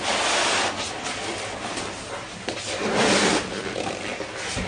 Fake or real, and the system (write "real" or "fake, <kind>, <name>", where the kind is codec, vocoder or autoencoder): real